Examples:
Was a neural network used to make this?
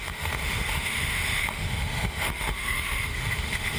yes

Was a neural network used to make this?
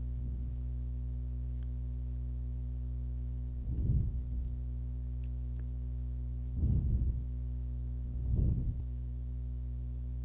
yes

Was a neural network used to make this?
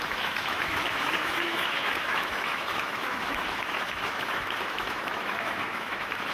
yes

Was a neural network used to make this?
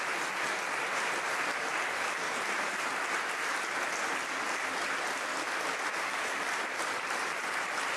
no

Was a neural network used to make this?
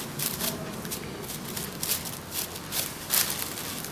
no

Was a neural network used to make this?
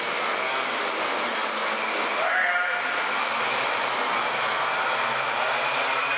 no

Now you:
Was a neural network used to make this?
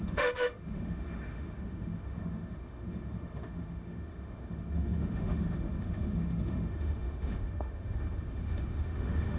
yes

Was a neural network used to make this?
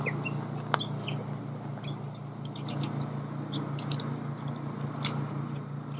no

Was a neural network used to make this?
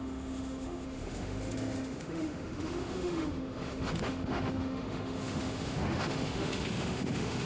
yes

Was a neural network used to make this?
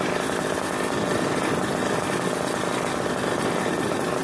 no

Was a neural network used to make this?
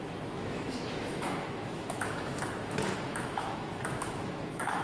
yes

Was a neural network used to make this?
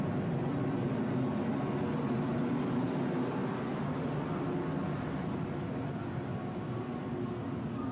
no